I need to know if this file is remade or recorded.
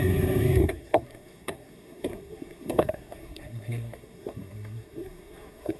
remade